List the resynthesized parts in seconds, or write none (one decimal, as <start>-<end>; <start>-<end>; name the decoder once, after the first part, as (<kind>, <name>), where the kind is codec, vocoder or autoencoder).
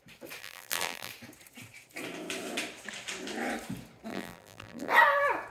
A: 0.4-1.1 (vocoder, BigVGAN v2); 4.1-4.9